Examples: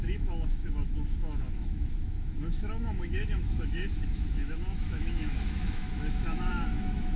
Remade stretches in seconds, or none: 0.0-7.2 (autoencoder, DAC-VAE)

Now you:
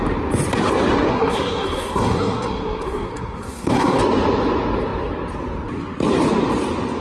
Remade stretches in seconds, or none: 1.1-4.0 (codec, SNAC)

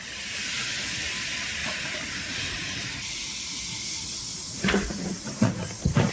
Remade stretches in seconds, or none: 1.6-3.3 (vocoder, Vocos); 3.7-6.1

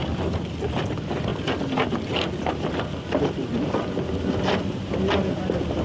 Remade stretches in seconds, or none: 0.7-1.3 (vocoder, BigVGAN v2); 2.5-5.8

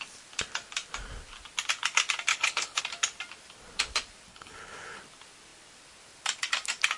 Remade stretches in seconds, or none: 2.3-2.8 (codec, HILCodec); 4.3-5.0

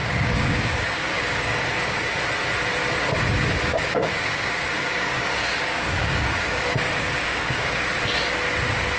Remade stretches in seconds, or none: 0.0-2.0 (codec, DAC); 3.7-7.9